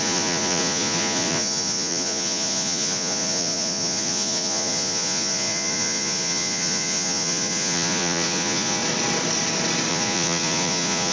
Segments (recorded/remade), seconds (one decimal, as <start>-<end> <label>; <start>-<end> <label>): 0.0-8.8 remade; 8.8-9.9 recorded; 9.9-11.1 remade